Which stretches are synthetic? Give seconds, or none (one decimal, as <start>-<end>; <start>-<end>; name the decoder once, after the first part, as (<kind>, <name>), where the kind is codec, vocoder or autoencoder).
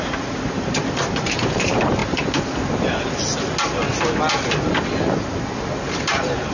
0.0-2.0 (vocoder, BigVGAN v2); 5.9-6.5